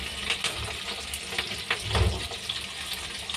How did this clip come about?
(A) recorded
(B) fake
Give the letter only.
A